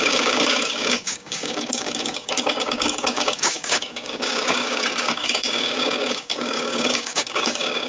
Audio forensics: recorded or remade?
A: remade